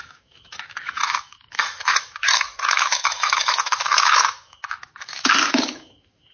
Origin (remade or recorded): remade